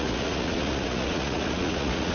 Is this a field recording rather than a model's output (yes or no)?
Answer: no